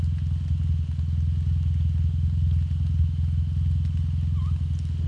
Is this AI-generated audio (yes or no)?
no